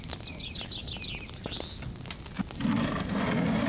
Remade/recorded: recorded